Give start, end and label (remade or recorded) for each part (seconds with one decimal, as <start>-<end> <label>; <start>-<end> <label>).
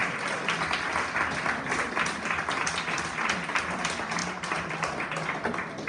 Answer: 0.0-5.9 recorded